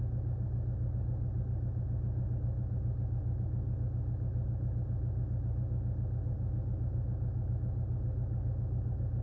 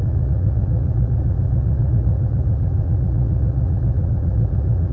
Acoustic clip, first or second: first